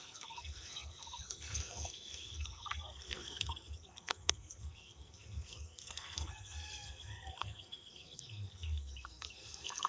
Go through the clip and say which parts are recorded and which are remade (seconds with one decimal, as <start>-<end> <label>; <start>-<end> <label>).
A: 0.0-9.9 remade